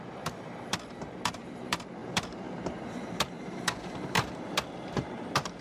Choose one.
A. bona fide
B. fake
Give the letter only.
B